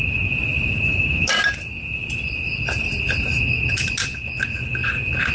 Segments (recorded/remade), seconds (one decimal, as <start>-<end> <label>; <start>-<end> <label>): 0.0-4.2 remade; 4.2-5.3 recorded